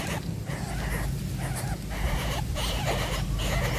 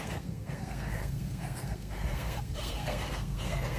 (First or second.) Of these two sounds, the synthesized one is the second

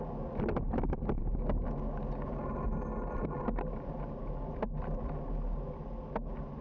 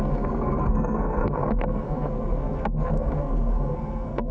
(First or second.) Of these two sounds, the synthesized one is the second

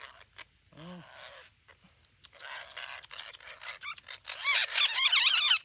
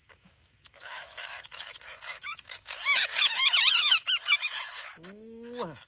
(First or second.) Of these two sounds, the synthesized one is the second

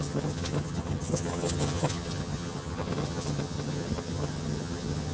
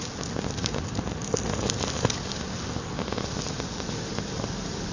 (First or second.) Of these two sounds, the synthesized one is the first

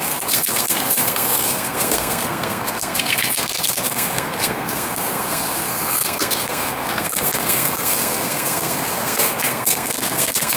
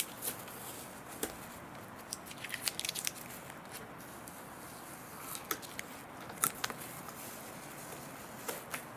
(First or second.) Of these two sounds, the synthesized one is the first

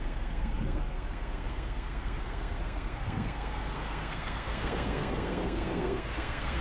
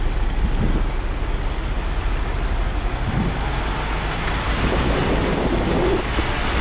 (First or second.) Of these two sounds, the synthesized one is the first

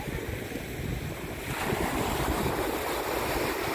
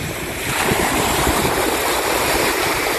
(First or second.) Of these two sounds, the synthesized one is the second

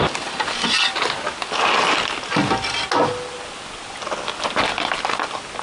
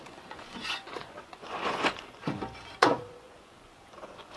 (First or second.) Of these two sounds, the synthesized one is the second